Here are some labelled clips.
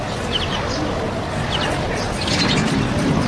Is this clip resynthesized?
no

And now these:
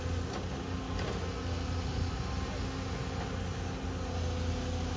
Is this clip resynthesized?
no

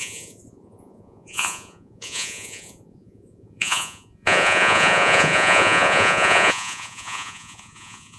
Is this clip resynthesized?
yes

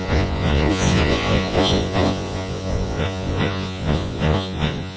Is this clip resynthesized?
yes